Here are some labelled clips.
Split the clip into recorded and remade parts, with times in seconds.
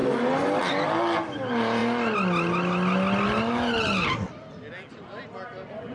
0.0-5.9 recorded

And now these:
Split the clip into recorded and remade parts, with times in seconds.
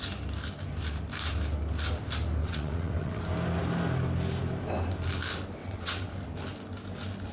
0.0-2.4 recorded; 2.4-3.2 remade; 3.2-5.6 recorded; 5.6-6.1 remade; 6.1-7.3 recorded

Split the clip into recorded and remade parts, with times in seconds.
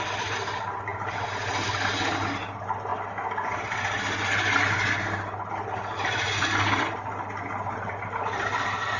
0.0-9.0 recorded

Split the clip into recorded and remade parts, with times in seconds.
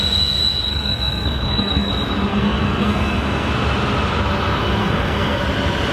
0.0-0.7 recorded; 0.7-1.9 remade; 1.9-2.3 recorded; 2.3-3.5 remade; 3.5-4.8 recorded; 4.8-5.4 remade; 5.4-5.9 recorded